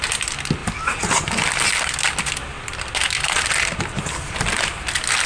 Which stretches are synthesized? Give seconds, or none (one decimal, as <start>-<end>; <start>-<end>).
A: none